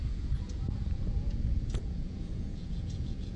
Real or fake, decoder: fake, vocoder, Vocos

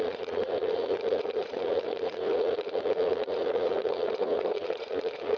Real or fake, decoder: fake, vocoder, Vocos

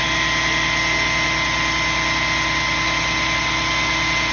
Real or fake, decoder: real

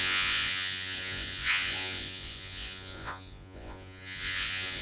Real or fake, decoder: fake, vocoder, Vocos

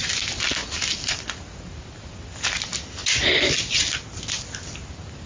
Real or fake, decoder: real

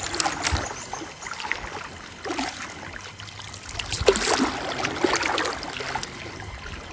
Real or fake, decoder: real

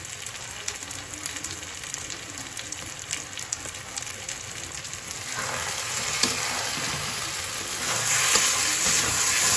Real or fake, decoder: real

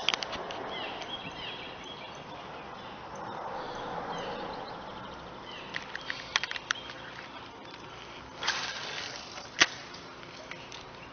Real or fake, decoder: real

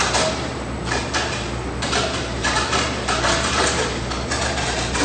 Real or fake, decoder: real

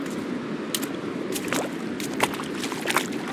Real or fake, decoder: real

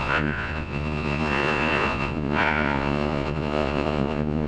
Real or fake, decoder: fake, vocoder, Vocos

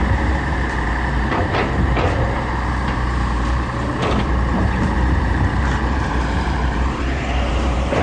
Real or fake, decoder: fake, vocoder, BigVGAN v2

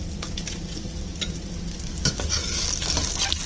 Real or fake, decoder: real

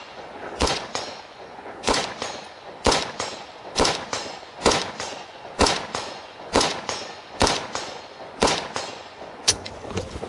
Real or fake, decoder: fake, vocoder, Vocos